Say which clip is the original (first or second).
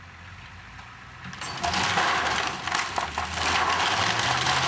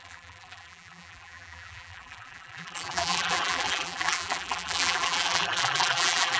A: first